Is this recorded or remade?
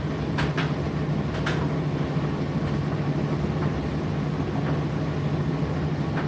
recorded